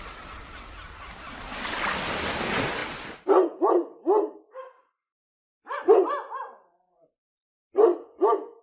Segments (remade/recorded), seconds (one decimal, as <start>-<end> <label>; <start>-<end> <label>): 0.0-8.6 recorded